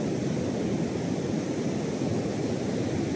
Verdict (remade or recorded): recorded